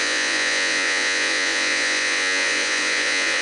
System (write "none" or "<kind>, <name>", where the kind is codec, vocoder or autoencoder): vocoder, Vocos